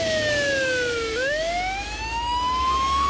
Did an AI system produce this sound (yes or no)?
yes